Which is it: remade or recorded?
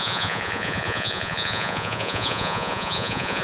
remade